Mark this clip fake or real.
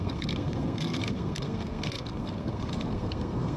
fake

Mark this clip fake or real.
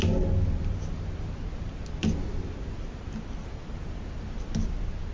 real